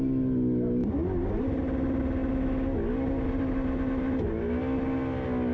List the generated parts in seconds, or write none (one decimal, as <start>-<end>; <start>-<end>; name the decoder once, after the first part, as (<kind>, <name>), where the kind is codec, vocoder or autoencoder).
none